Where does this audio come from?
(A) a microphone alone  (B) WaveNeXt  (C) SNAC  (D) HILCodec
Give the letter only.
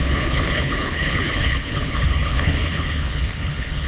D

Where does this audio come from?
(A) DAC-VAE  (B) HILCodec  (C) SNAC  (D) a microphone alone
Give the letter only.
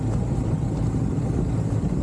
D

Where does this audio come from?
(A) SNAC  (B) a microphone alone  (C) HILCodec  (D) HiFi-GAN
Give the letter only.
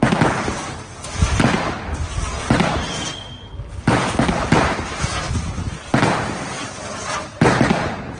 B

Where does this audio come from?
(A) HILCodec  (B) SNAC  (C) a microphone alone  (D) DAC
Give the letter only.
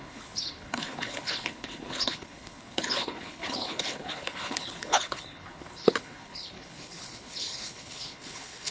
A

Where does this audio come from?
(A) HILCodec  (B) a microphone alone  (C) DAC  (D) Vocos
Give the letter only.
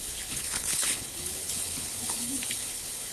A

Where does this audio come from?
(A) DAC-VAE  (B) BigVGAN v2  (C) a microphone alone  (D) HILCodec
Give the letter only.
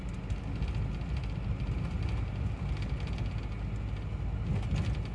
C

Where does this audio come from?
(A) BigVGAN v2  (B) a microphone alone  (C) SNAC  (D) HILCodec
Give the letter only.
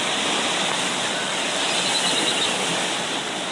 B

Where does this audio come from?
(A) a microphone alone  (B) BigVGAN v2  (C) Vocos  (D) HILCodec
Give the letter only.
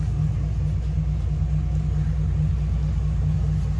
A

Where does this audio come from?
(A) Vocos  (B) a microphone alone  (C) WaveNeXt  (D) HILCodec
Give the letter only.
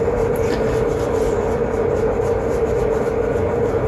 B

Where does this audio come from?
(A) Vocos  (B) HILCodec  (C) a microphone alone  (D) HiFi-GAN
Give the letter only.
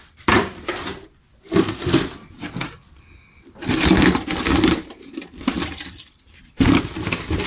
C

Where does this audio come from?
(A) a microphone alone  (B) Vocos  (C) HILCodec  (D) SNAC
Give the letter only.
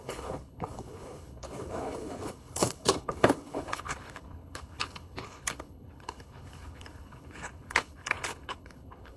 C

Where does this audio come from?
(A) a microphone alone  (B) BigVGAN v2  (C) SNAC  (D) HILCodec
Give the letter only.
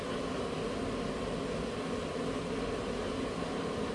A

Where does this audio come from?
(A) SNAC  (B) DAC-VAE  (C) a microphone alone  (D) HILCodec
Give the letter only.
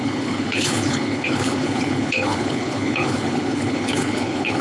D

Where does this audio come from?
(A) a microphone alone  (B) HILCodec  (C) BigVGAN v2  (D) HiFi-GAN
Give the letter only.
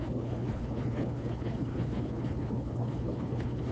B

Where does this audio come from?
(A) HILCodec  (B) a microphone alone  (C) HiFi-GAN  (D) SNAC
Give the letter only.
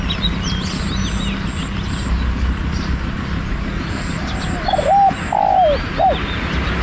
B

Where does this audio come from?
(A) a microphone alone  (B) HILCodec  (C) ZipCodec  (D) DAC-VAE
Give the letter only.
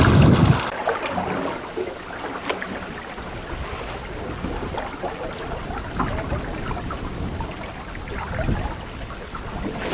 A